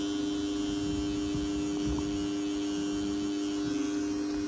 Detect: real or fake real